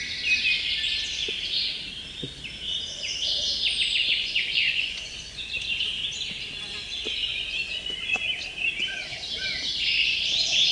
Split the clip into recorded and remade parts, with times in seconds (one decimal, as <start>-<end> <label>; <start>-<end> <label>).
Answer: 0.0-4.0 recorded; 4.0-5.5 remade; 5.5-7.2 recorded; 7.2-8.2 remade; 8.2-10.7 recorded